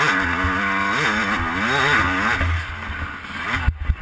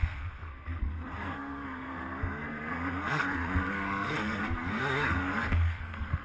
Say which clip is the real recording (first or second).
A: first